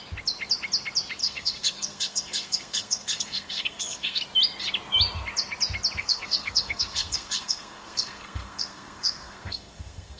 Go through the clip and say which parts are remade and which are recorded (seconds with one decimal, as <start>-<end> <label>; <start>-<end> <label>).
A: 0.0-1.2 recorded; 1.2-4.2 remade; 4.2-6.0 recorded; 6.0-10.2 remade